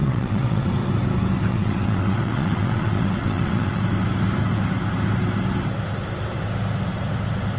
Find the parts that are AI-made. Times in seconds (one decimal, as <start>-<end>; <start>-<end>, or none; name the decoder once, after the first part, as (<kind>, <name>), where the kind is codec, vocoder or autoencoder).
0.0-0.7 (vocoder, WaveNeXt); 1.5-3.8